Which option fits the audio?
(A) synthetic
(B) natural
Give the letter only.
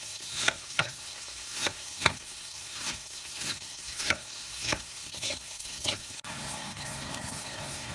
A